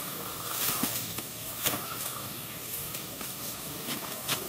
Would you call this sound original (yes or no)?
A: no